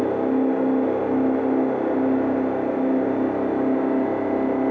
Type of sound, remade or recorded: recorded